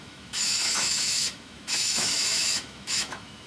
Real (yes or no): no